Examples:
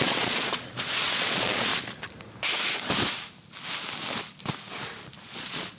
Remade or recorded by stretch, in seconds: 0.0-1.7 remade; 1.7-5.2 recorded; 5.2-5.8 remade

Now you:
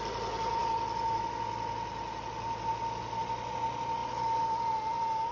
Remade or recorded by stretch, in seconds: 0.0-5.3 recorded

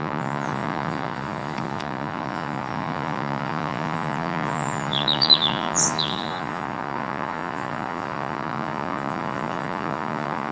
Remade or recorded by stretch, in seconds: 0.0-10.5 remade

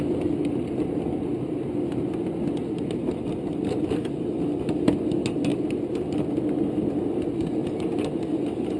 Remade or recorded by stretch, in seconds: 0.0-8.8 recorded

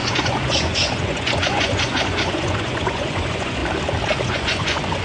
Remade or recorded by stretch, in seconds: 0.0-3.6 remade; 3.6-4.2 recorded; 4.2-5.0 remade

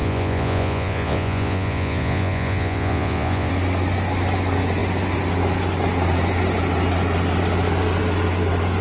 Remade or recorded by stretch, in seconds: 0.0-3.5 remade; 3.5-8.8 recorded